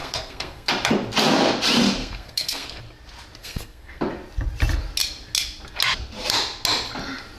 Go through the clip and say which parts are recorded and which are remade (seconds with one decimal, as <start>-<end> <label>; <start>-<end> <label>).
0.0-0.7 remade; 0.7-2.0 recorded; 2.0-2.8 remade; 2.8-3.4 recorded; 3.4-4.0 remade; 4.0-7.4 recorded